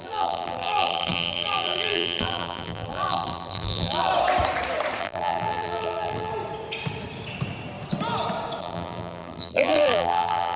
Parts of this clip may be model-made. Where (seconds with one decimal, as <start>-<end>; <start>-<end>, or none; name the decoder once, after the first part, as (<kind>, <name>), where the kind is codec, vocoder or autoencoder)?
0.0-4.1 (vocoder, BigVGAN v2); 5.0-6.3; 8.6-10.6